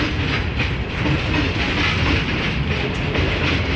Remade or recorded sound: recorded